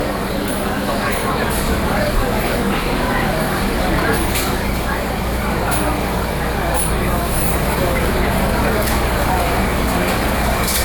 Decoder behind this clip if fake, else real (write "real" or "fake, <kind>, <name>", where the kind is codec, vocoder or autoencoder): fake, codec, DAC